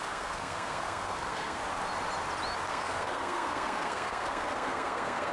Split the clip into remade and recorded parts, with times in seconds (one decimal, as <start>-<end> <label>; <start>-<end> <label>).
0.0-1.6 remade; 1.6-2.7 recorded; 2.7-5.3 remade